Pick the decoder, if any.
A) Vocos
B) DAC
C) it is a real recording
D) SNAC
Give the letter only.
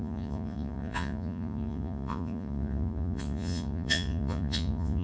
A